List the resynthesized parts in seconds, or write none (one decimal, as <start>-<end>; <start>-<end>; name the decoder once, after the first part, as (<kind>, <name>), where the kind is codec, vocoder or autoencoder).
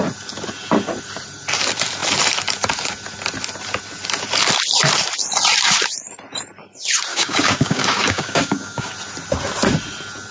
7.1-8.9 (codec, DAC)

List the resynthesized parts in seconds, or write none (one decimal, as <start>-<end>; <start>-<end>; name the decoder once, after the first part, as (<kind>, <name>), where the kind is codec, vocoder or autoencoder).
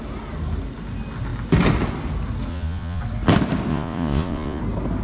2.5-3.0 (vocoder, Vocos); 3.7-4.6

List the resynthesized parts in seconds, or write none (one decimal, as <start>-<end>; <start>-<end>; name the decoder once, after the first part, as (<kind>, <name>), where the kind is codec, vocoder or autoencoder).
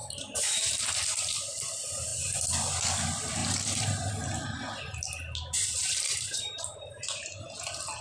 0.0-1.0 (vocoder, BigVGAN v2); 3.4-4.1; 5.8-7.3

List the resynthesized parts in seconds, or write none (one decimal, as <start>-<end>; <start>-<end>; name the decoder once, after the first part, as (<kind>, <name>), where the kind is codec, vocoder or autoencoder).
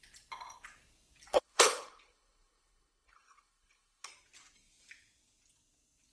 1.3-4.1 (codec, HILCodec)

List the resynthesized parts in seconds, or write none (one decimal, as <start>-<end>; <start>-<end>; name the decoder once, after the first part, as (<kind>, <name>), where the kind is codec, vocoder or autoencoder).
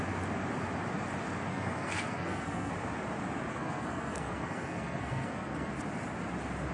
1.5-2.7 (codec, SNAC); 3.5-5.7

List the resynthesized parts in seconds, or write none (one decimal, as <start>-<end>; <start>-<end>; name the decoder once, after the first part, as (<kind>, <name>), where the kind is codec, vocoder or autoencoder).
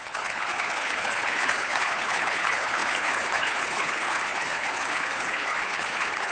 0.0-6.3 (codec, HILCodec)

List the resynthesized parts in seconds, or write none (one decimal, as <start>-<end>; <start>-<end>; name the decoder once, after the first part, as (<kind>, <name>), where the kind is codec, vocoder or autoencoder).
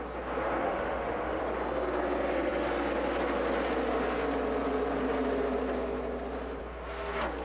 0.6-1.4 (autoencoder, DAC-VAE)